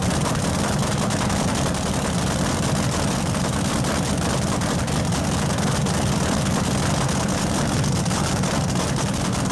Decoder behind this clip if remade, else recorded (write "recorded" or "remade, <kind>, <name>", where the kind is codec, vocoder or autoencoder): recorded